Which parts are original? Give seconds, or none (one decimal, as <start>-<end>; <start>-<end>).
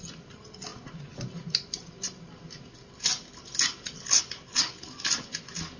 0.0-5.8